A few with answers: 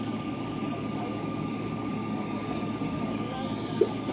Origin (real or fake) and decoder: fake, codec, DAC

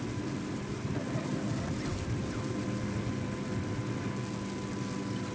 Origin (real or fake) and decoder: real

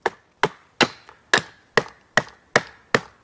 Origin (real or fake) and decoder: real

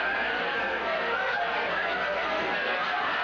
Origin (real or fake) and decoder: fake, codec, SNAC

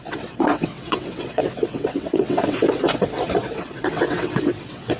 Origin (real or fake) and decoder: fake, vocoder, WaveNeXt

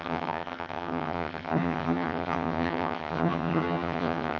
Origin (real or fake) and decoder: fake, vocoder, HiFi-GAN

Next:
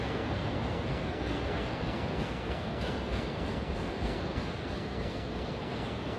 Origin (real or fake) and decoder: fake, codec, SNAC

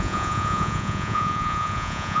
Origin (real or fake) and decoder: fake, vocoder, Vocos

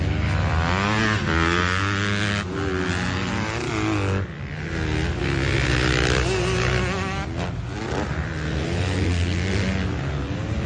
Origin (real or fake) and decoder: real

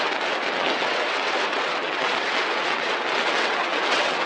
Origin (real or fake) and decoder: fake, vocoder, WaveNeXt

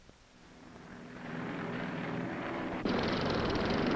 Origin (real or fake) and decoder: fake, vocoder, BigVGAN v2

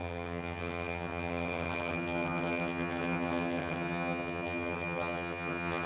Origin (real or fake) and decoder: fake, vocoder, HiFi-GAN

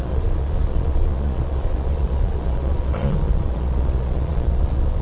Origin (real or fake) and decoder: fake, vocoder, Vocos